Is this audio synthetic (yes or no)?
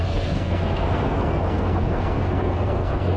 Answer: yes